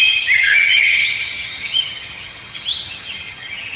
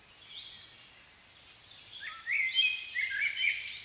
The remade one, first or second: first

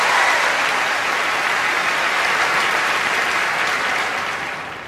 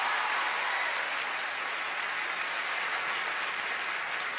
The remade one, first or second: first